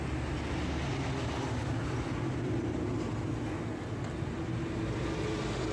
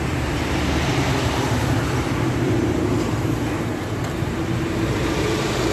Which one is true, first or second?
first